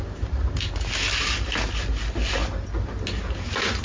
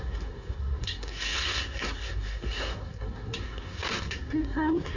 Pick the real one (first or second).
first